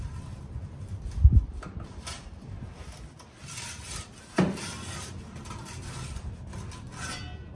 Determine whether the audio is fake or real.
real